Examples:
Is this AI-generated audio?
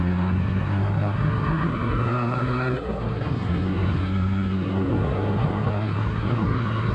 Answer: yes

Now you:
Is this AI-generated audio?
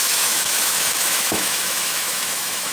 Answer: yes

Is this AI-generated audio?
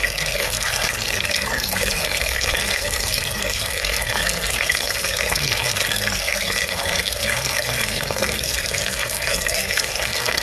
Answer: yes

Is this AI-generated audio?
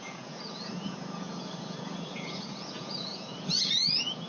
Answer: yes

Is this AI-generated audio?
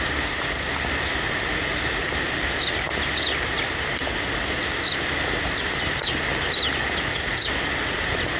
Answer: no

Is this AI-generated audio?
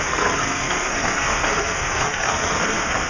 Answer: yes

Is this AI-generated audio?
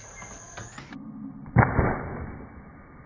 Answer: no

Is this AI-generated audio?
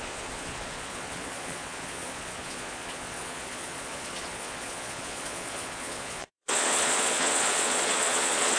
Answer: yes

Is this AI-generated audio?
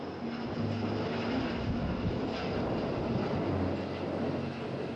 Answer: no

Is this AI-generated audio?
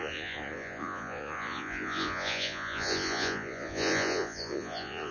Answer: yes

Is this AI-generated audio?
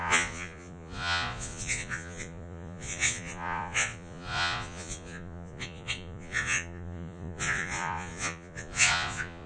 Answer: yes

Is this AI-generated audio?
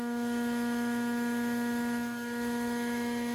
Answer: yes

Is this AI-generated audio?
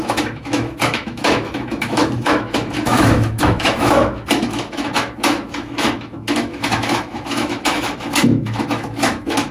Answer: yes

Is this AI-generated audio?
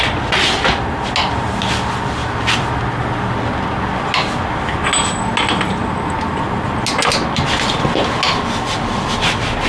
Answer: no